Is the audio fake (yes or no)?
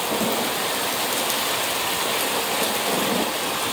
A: no